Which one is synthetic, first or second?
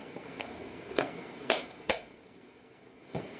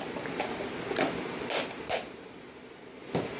first